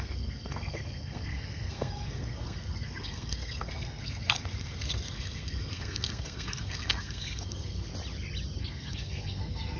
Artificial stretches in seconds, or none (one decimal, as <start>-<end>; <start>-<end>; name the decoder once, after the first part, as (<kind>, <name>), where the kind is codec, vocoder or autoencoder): 0.0-7.9 (codec, SNAC); 8.6-9.8